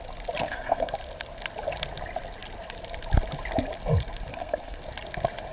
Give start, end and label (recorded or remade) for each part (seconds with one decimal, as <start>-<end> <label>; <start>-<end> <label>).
0.0-0.4 recorded; 0.4-0.9 remade; 0.9-4.3 recorded; 4.3-4.8 remade; 4.8-5.5 recorded